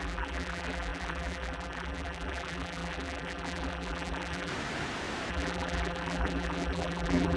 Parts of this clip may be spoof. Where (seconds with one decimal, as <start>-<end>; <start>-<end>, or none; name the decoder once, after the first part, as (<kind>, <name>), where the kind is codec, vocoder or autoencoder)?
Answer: 0.0-4.5 (vocoder, BigVGAN v2); 5.3-7.4